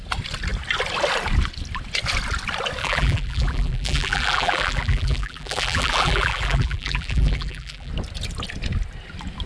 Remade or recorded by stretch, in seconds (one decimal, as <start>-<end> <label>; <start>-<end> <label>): 0.0-2.8 recorded; 2.8-7.9 remade; 7.9-9.5 recorded